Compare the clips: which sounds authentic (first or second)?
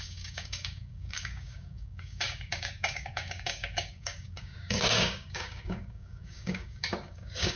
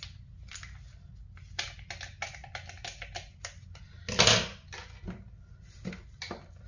second